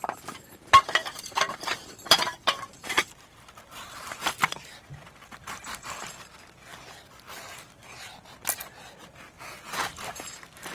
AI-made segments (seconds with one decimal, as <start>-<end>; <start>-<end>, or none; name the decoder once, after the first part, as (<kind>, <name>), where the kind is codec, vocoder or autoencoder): 1.0-4.5 (vocoder, BigVGAN v2)